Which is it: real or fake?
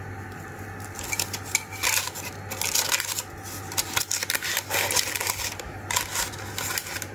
real